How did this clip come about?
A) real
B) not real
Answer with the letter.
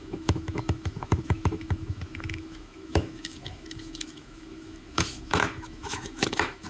B